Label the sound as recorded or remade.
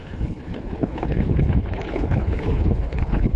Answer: remade